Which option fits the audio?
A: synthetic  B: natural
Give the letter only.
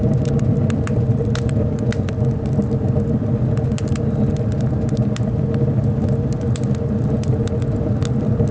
B